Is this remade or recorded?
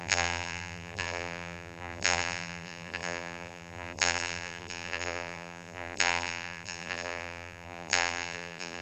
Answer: remade